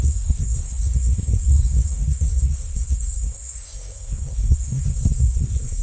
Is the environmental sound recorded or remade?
remade